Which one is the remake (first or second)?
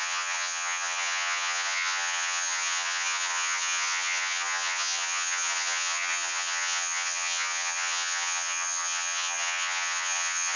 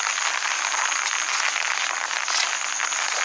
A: first